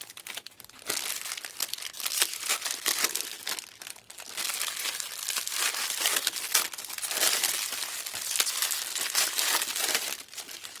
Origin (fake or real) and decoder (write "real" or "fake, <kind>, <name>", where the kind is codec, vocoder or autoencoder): real